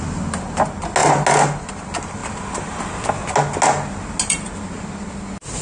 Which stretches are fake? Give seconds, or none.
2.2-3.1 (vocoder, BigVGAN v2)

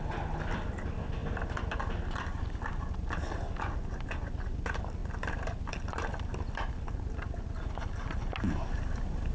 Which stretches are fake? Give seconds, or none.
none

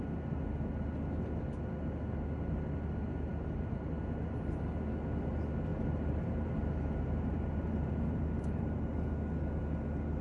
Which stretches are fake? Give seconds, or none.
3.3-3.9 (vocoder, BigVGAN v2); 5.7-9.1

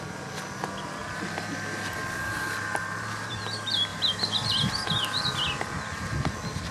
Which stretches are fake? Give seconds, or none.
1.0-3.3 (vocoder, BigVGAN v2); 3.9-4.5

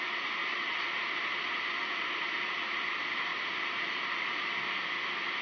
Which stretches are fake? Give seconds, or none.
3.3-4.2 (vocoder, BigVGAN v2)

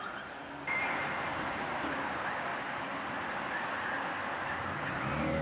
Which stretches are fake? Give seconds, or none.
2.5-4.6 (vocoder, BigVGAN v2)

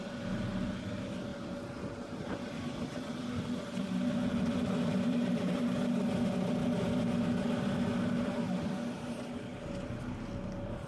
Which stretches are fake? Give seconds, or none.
1.3-5.7 (vocoder, BigVGAN v2); 9.5-10.0

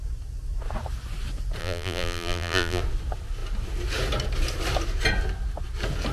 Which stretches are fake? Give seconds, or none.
1.6-2.8 (vocoder, BigVGAN v2)